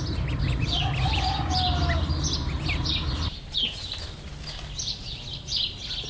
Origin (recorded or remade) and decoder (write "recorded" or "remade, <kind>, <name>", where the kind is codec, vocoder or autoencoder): recorded